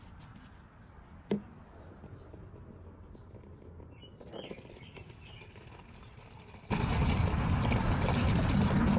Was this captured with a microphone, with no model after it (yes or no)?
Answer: yes